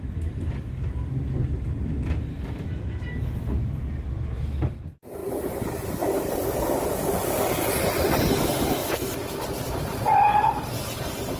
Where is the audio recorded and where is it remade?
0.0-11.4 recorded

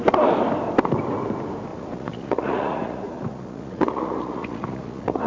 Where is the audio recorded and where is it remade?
0.0-1.7 recorded; 1.7-5.3 remade

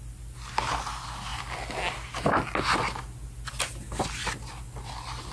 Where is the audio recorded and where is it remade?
0.0-5.3 recorded

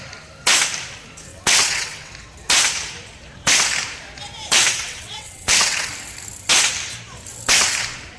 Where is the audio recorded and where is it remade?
0.0-1.3 recorded; 1.3-2.1 remade; 2.1-4.7 recorded; 4.7-5.9 remade; 5.9-8.2 recorded